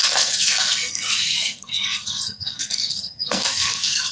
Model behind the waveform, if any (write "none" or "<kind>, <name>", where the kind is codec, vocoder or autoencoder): codec, SNAC